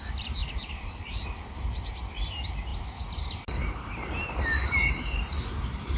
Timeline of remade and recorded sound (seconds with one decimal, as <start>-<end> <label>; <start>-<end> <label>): 0.0-0.4 recorded; 0.4-1.9 remade; 1.9-2.7 recorded; 2.7-6.0 remade